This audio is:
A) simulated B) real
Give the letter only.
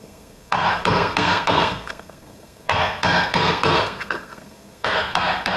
A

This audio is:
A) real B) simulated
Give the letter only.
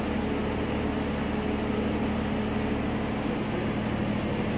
A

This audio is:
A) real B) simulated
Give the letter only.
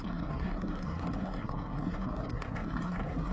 B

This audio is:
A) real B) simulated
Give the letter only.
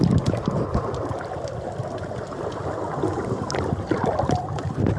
A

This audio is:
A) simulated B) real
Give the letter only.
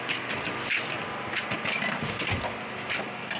B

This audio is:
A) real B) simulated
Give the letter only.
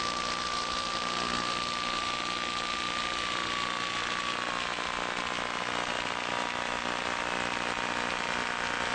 A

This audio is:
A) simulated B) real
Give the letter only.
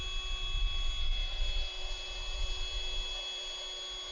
B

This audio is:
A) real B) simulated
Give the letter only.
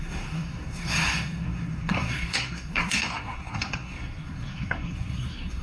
B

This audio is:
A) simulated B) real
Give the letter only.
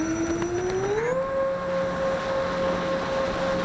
B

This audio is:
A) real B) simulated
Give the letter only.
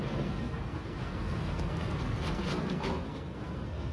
B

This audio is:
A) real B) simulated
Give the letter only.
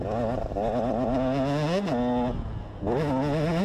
A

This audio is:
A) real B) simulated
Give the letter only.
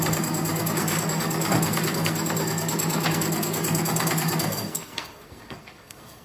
B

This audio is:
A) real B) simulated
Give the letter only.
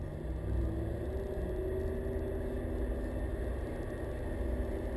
A